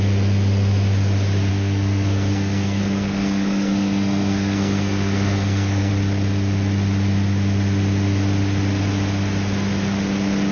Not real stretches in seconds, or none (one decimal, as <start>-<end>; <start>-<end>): 1.5-5.9